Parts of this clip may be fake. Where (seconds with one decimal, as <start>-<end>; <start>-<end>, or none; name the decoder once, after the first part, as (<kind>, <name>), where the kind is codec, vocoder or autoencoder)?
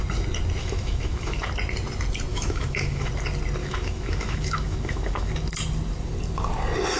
0.6-1.4 (autoencoder, DAC-VAE); 2.3-3.1; 3.6-5.3